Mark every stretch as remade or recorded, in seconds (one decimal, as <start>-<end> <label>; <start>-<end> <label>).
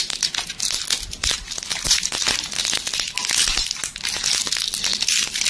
0.0-1.7 recorded; 1.7-2.6 remade; 2.6-5.5 recorded